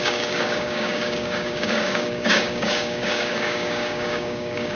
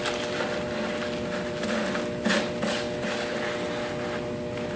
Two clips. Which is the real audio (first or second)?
second